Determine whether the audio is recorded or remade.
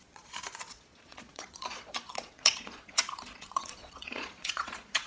remade